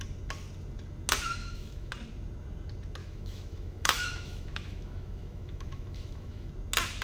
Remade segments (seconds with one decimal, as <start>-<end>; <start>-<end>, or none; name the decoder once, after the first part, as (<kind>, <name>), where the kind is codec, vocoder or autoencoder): 1.4-1.9 (autoencoder, DAC-VAE); 3.0-6.5